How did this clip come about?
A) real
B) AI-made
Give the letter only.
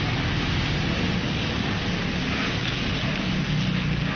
A